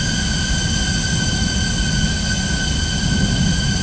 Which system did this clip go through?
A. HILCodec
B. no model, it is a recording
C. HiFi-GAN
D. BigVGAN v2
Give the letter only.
B